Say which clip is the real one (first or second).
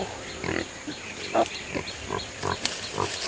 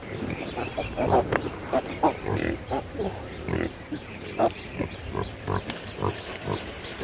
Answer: first